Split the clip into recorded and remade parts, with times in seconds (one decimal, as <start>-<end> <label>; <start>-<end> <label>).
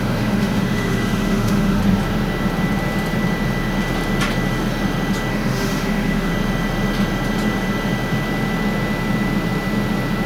0.0-1.8 remade; 1.8-5.3 recorded; 5.3-6.3 remade; 6.3-10.3 recorded